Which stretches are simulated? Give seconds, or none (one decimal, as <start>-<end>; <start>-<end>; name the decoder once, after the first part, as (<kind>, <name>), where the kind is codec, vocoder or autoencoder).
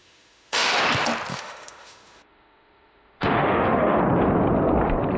0.0-0.8 (autoencoder, DAC-VAE); 1.3-4.0